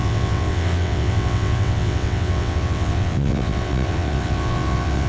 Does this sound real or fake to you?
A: fake